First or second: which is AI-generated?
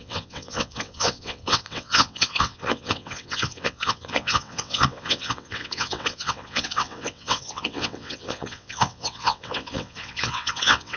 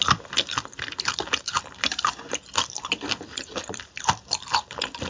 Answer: first